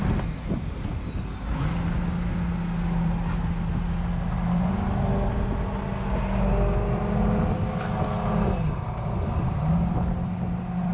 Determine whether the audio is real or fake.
real